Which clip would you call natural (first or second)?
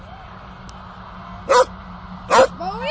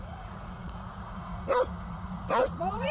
first